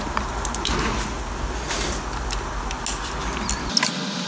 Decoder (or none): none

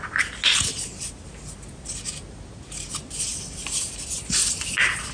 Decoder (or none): none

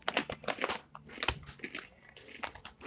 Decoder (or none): none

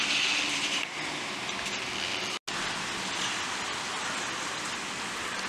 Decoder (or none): none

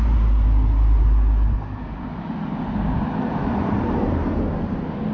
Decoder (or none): none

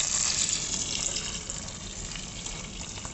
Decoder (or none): none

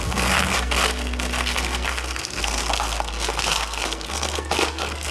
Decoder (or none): codec, SNAC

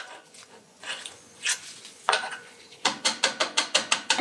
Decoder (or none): vocoder, Vocos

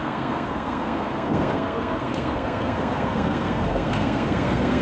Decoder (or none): codec, SNAC